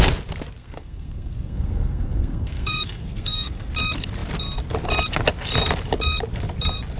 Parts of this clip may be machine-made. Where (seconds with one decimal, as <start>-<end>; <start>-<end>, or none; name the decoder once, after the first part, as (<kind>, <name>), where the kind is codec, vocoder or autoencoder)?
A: 0.6-3.7 (codec, SNAC)